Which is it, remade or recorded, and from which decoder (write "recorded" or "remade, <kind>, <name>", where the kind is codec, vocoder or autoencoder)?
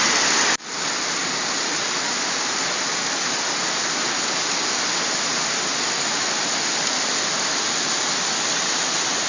recorded